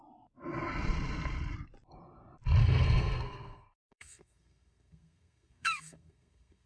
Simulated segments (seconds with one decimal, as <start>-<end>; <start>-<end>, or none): 2.6-6.7